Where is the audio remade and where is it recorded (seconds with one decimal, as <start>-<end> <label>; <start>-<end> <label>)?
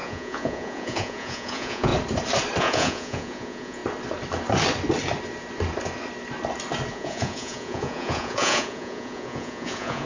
0.0-1.9 remade; 1.9-2.6 recorded; 2.6-3.8 remade; 3.8-6.9 recorded; 6.9-10.1 remade